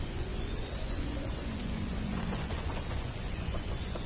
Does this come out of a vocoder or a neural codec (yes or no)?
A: yes